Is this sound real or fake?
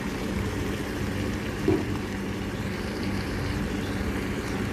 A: fake